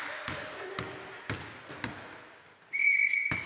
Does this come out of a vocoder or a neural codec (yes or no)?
no